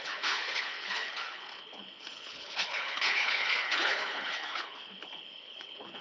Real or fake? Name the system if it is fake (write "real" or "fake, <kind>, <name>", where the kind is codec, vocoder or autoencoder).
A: fake, codec, HILCodec